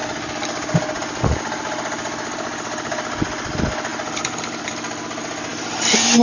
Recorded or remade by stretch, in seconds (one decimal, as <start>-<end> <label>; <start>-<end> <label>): 0.0-6.2 recorded